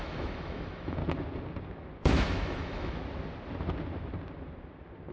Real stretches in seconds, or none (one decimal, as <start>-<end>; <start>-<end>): 1.0-2.0; 3.0-5.1